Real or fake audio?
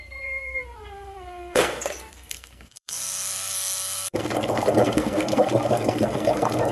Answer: fake